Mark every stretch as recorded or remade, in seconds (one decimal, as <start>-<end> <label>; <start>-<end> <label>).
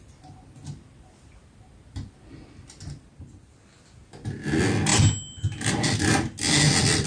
0.0-7.1 recorded